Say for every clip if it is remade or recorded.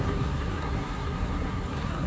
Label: remade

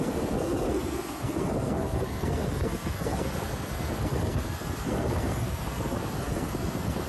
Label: remade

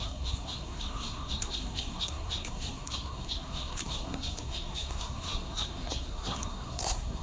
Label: remade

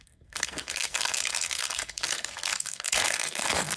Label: remade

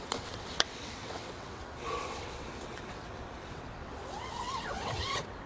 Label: remade